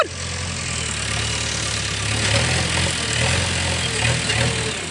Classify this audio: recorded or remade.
recorded